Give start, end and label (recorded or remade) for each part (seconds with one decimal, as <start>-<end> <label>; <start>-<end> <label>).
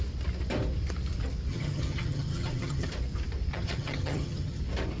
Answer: 0.0-1.5 recorded; 1.5-2.9 remade; 2.9-3.5 recorded; 3.5-4.6 remade; 4.6-5.0 recorded